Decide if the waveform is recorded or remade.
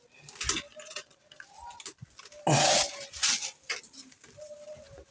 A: recorded